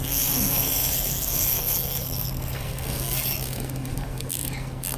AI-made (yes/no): yes